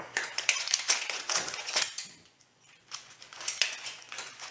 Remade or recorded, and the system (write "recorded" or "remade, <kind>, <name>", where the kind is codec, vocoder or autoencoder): remade, vocoder, Vocos